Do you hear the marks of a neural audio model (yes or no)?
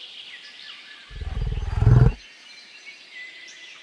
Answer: no